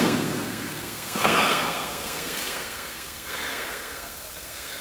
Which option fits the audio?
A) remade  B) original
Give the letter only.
A